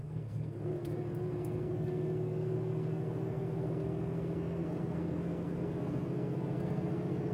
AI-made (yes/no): yes